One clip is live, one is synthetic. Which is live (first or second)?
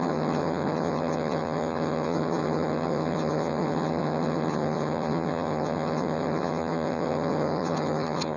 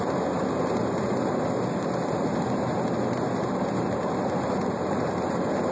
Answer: second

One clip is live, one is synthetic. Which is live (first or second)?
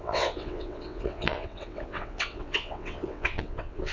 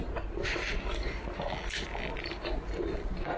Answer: second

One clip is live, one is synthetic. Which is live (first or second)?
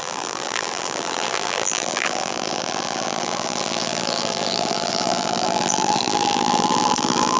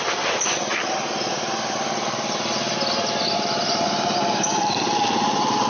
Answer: second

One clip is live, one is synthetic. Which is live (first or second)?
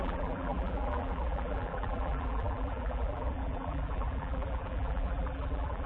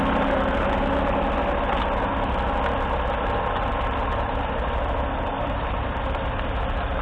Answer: second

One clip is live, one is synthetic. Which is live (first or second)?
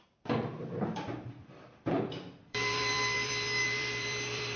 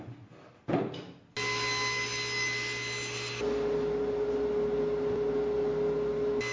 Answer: second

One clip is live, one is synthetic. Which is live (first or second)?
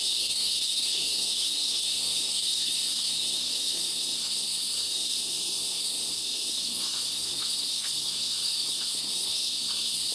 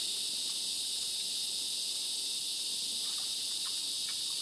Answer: second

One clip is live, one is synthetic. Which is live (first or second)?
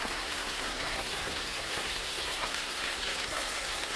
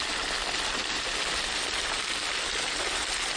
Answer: second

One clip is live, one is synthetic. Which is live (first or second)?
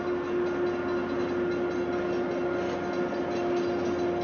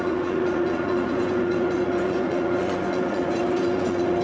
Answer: first